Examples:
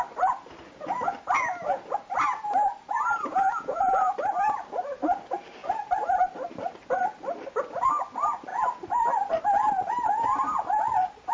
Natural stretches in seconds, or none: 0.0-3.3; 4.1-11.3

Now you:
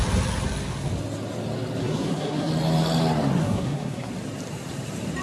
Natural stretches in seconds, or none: 0.0-1.8; 2.5-3.4; 4.1-5.2